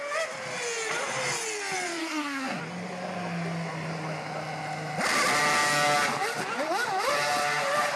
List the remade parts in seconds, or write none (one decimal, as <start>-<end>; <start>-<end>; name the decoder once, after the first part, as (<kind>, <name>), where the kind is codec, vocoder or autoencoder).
2.0-2.6 (codec, SNAC)